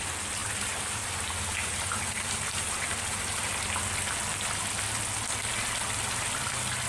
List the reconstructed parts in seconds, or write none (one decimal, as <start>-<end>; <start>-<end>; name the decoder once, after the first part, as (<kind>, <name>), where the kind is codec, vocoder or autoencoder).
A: 0.4-3.5 (vocoder, BigVGAN v2)